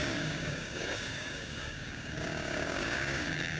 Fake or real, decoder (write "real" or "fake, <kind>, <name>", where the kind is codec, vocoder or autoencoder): fake, codec, DAC